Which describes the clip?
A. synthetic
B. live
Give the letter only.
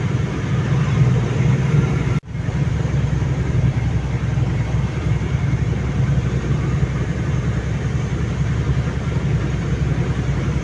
A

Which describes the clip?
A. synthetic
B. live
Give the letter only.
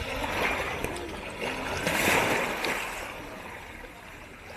B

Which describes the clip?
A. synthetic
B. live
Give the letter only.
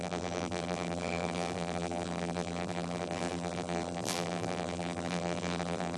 A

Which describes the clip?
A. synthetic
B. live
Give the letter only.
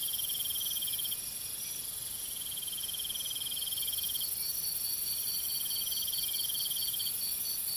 B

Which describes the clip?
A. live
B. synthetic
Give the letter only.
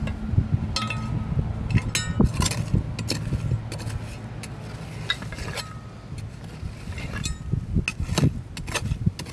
A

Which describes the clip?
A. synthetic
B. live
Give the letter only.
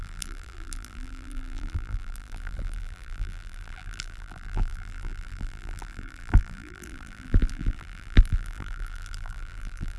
A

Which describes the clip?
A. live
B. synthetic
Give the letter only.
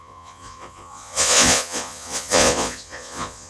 B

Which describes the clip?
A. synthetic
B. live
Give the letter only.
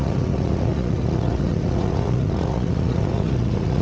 A